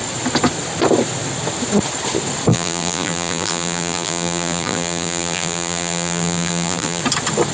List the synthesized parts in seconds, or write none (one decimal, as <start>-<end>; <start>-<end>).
2.5-7.0